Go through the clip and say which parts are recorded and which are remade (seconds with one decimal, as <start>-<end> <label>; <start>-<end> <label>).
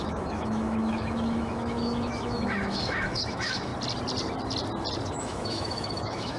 0.0-3.7 remade; 3.7-5.1 recorded; 5.1-6.4 remade